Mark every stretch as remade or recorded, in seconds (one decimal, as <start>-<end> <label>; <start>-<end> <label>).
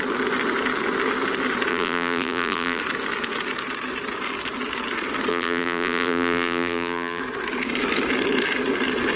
0.0-1.7 recorded; 1.7-2.8 remade; 2.8-5.3 recorded; 5.3-7.2 remade; 7.2-9.2 recorded